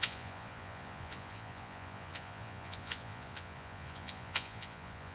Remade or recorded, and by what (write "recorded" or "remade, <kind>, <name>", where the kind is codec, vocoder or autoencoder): remade, vocoder, Vocos